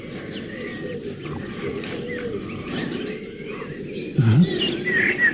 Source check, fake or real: real